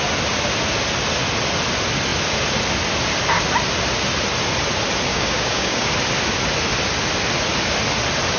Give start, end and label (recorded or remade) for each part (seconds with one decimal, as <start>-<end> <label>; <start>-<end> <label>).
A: 0.0-5.1 recorded; 5.1-5.9 remade; 5.9-8.4 recorded